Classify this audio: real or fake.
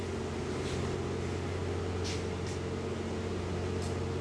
real